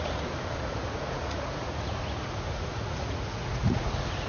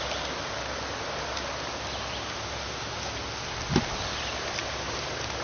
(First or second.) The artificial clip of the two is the first